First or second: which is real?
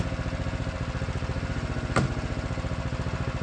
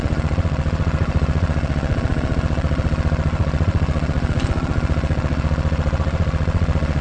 first